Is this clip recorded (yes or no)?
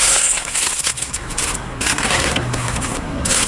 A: no